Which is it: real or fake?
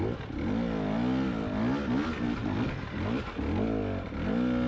real